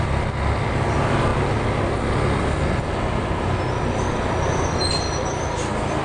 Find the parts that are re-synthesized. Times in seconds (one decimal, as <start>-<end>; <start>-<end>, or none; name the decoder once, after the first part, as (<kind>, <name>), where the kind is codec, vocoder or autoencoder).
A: none